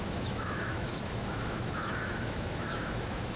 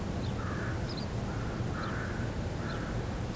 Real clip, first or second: second